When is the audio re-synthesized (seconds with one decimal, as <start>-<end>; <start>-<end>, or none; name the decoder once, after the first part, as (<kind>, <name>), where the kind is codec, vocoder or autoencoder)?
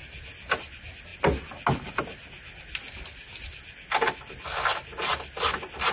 none